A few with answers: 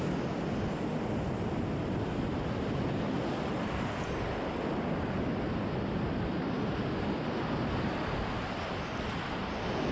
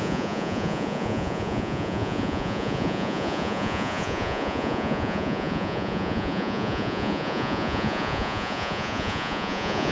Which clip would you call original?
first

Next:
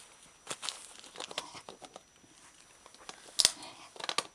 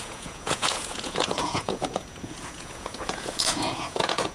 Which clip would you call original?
first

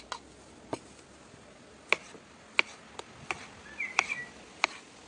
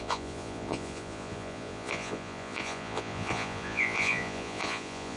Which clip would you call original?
first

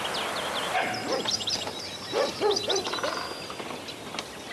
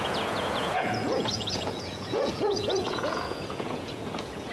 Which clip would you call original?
first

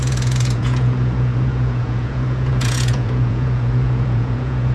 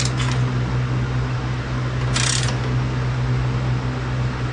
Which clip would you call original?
second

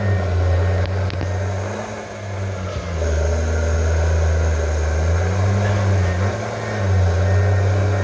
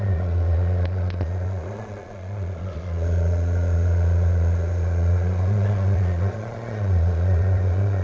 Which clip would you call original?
first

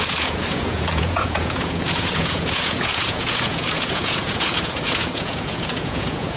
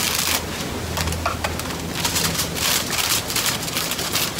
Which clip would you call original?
second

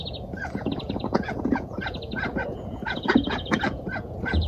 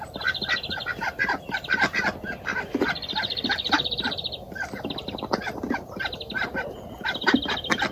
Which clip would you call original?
second